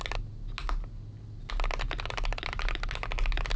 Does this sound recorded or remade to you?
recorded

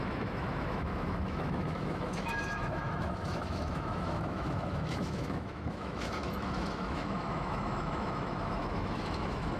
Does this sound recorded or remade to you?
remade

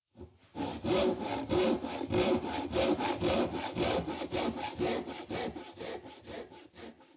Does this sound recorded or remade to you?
recorded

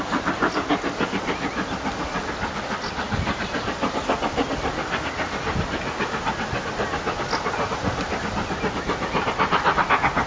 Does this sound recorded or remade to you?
recorded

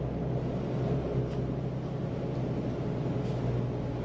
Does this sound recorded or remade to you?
recorded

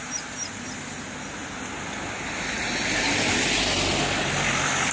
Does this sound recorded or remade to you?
recorded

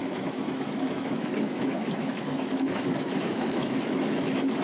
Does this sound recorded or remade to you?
remade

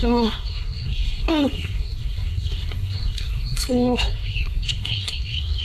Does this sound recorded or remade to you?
remade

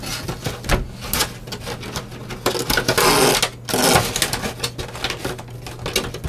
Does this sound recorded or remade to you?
recorded